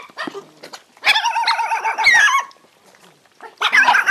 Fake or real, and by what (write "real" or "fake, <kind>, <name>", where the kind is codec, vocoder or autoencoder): real